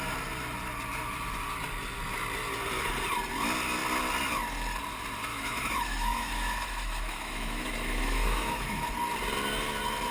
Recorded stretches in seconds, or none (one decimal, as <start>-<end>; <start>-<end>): 0.0-5.3; 8.9-10.1